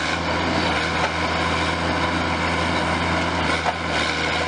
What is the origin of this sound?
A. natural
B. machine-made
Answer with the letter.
A